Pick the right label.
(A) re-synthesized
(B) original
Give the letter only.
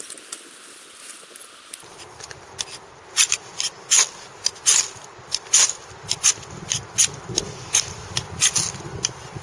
B